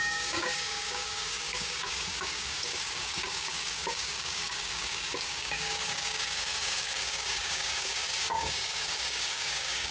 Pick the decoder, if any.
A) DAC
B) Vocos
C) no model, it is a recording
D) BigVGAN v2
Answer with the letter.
A